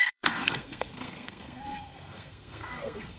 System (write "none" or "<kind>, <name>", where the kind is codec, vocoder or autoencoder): codec, SNAC